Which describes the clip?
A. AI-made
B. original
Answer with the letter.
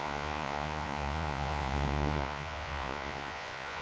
A